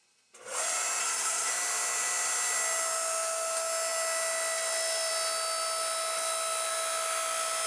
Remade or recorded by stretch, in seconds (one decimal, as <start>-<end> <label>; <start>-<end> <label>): 0.0-1.0 recorded; 1.0-1.5 remade; 1.5-7.7 recorded